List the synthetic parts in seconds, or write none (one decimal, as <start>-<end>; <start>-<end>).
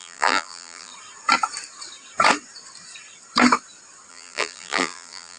0.0-0.9; 4.1-5.4